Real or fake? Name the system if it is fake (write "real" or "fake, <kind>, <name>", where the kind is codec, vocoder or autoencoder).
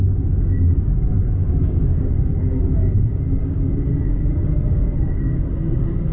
fake, codec, DAC